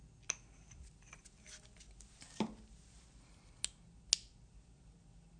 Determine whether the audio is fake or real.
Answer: real